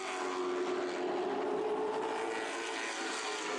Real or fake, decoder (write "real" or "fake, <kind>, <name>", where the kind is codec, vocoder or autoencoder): real